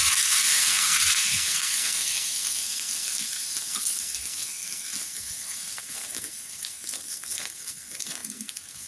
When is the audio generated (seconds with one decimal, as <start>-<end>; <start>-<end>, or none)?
0.0-8.9